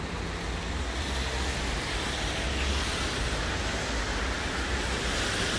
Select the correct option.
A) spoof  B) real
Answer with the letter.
B